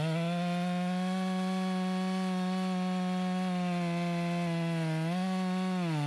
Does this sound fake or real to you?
real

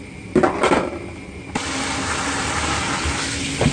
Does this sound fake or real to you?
real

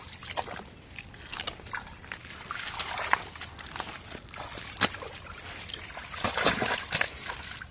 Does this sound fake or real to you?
real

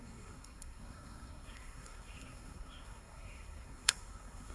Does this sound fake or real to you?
fake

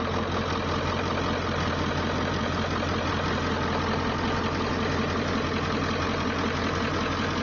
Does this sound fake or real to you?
real